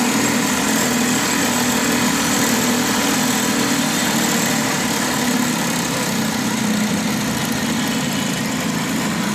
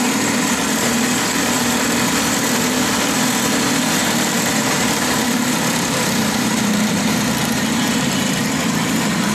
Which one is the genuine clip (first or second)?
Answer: first